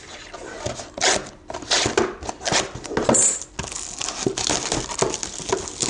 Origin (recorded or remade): recorded